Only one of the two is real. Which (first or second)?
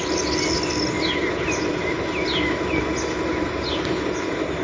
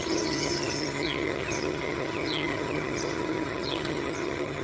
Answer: first